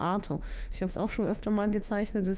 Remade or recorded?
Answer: remade